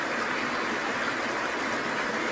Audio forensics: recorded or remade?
recorded